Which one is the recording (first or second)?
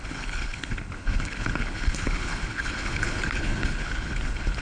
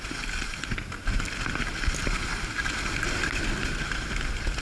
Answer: second